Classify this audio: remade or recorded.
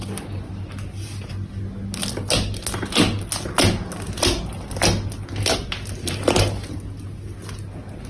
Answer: recorded